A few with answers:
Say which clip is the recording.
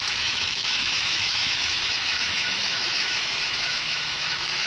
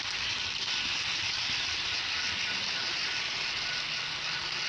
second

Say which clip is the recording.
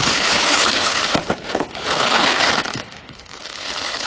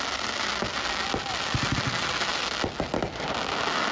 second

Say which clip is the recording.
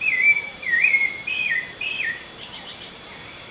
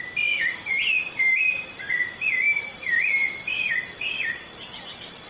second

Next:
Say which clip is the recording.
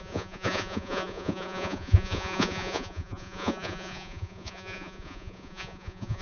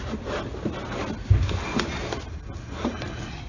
second